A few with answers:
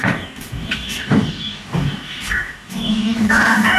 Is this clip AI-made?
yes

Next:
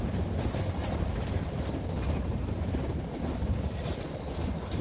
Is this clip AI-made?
no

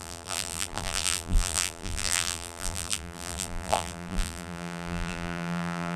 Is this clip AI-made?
yes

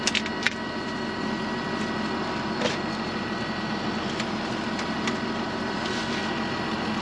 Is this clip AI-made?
no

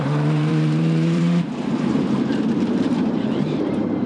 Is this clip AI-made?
yes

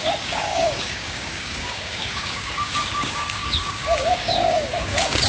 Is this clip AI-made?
yes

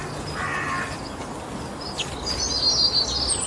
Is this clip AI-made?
no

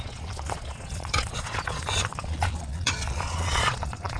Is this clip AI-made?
yes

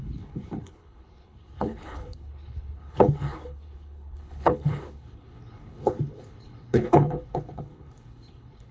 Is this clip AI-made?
yes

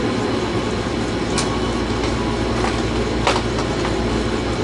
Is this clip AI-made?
no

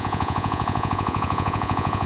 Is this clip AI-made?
yes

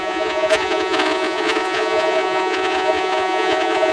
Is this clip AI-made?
yes